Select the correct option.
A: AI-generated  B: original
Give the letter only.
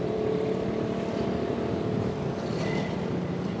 B